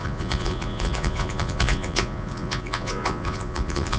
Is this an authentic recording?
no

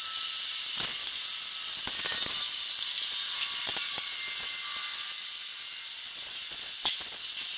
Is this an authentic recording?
yes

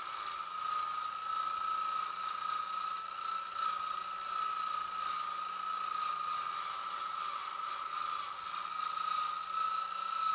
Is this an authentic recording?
yes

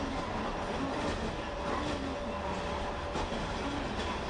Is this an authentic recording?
yes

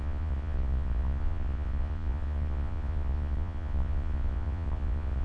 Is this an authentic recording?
no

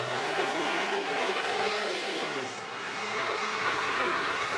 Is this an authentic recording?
no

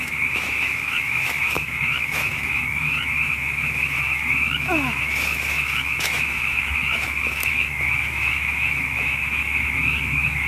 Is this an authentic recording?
no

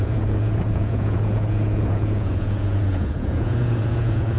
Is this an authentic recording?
no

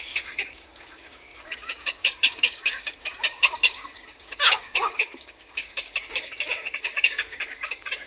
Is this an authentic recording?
no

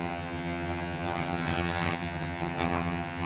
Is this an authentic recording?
no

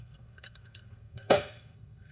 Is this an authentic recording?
no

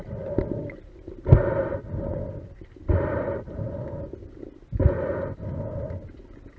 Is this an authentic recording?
yes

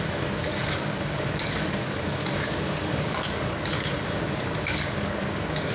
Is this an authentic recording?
no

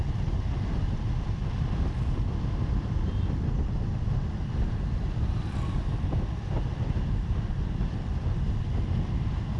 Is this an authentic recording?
yes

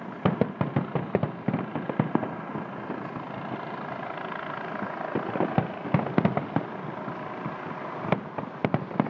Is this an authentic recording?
yes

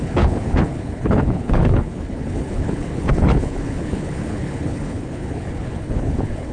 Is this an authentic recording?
no